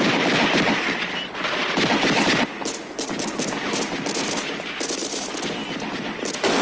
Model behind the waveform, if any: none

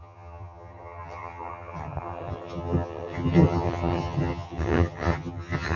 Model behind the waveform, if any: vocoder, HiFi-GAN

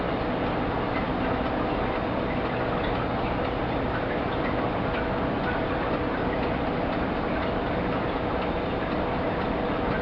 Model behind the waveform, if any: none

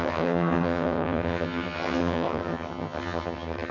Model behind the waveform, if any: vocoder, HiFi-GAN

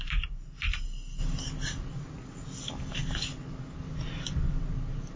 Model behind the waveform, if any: none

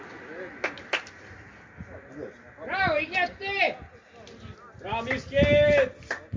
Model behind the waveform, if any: none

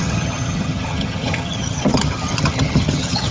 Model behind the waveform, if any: vocoder, HiFi-GAN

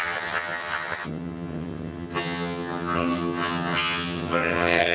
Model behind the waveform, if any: vocoder, HiFi-GAN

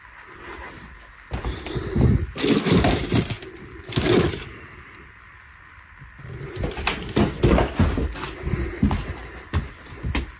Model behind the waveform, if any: none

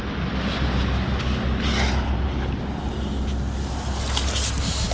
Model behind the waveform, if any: none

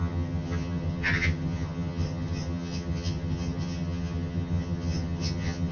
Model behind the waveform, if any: vocoder, HiFi-GAN